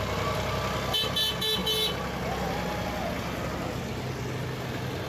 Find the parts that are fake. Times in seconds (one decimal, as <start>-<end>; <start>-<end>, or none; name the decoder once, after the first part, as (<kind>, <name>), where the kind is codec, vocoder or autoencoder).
none